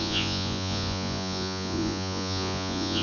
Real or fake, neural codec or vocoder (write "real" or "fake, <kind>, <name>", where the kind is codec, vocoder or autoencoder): fake, vocoder, Vocos